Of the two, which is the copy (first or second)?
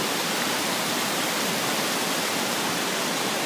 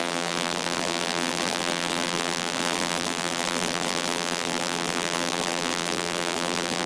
second